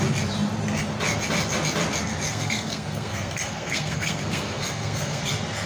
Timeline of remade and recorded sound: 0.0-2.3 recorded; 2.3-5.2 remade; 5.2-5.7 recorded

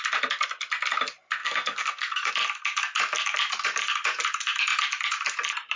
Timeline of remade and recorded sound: 0.0-1.4 recorded; 1.4-2.3 remade; 2.3-5.8 recorded

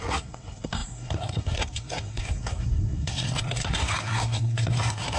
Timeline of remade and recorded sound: 0.0-5.2 remade

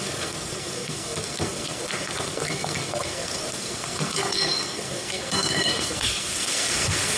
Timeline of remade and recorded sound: 0.0-7.2 remade